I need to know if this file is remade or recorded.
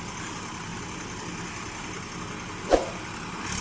recorded